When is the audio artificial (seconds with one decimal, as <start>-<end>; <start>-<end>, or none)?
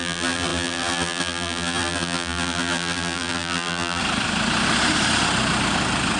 0.0-4.0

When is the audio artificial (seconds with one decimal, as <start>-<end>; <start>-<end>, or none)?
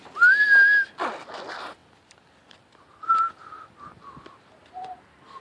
none